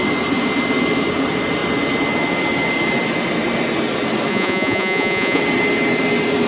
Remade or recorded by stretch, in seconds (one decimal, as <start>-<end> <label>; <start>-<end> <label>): 0.0-4.3 recorded; 4.3-5.4 remade; 5.4-6.5 recorded

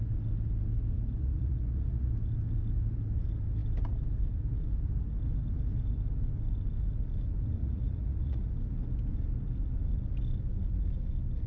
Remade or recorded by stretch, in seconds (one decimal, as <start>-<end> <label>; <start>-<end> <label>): 0.0-1.2 recorded; 1.2-2.1 remade; 2.1-7.6 recorded; 7.6-8.5 remade; 8.5-11.5 recorded